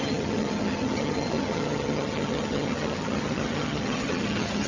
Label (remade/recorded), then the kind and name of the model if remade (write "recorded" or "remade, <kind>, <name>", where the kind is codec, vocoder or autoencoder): remade, vocoder, HiFi-GAN